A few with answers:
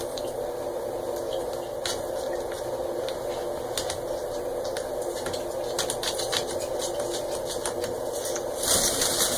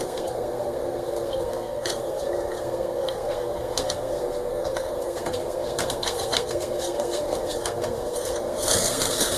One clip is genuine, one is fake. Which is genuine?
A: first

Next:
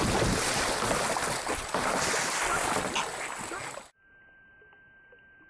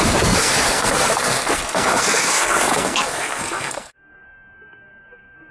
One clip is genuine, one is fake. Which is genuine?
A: first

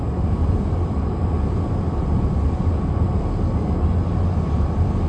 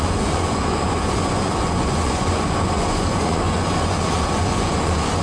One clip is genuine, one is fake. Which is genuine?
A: first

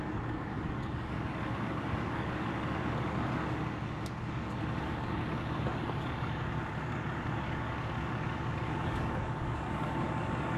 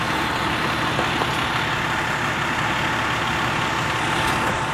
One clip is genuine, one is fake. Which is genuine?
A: second